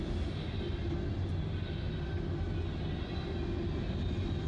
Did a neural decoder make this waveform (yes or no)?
no